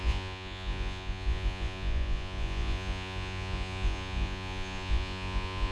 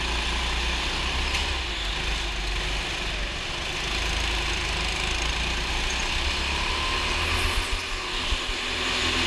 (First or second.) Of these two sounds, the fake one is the first